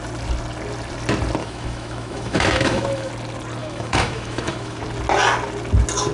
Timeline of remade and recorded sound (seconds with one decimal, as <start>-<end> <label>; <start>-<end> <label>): 0.0-1.4 recorded; 1.4-3.1 remade; 3.1-3.6 recorded; 3.6-4.8 remade; 4.8-6.1 recorded